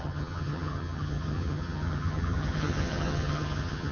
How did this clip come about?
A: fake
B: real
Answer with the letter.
A